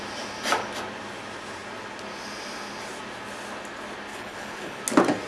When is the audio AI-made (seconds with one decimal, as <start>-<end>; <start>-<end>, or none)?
4.1-4.8